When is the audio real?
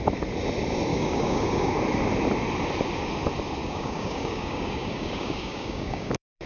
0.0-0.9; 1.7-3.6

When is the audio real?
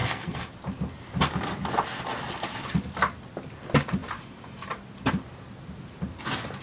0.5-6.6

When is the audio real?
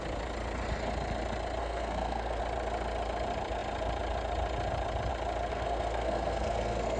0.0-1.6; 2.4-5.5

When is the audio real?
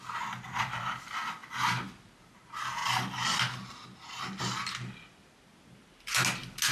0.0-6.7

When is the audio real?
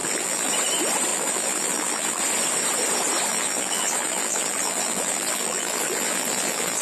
0.5-1.1; 2.2-3.3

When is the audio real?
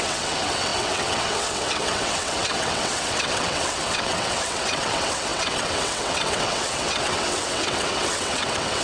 none